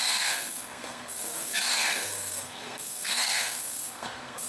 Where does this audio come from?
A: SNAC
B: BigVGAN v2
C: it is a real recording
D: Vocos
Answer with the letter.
A